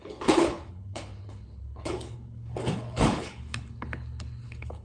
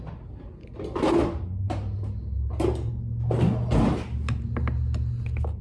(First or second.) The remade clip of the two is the first